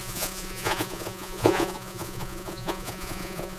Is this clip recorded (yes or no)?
no